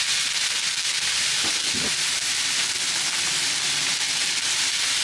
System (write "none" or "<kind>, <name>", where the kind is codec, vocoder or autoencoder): none